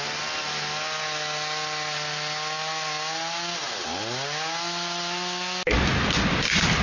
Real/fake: real